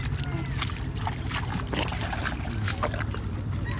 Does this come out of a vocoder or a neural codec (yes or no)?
no